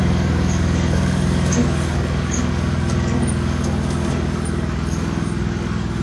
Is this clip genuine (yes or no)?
no